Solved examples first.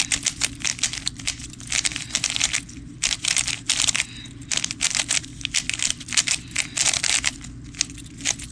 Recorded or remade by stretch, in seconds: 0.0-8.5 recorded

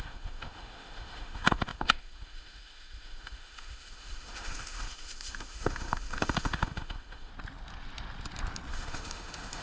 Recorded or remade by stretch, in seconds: 0.0-7.3 remade; 7.3-8.7 recorded; 8.7-9.6 remade

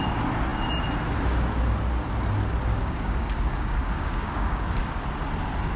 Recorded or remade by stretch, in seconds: 0.0-2.7 recorded; 2.7-5.0 remade; 5.0-5.8 recorded